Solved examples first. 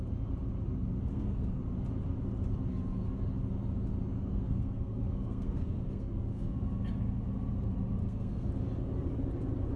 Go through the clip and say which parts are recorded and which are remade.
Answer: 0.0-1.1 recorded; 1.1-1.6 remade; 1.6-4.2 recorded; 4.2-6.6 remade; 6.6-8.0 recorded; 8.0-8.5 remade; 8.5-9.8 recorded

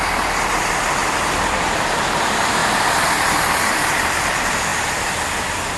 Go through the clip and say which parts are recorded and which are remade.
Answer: 0.0-5.8 remade

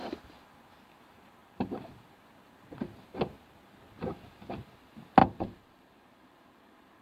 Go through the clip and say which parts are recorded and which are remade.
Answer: 0.0-1.4 recorded; 1.4-2.2 remade; 2.2-5.2 recorded; 5.2-7.0 remade

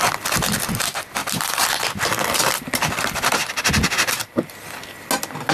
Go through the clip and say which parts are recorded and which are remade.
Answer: 0.0-1.2 recorded; 1.2-4.5 remade; 4.5-5.5 recorded

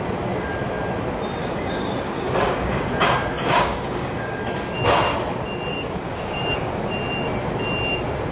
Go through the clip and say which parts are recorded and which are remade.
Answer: 0.0-1.4 recorded; 1.4-4.4 remade; 4.4-5.7 recorded; 5.7-6.9 remade; 6.9-8.3 recorded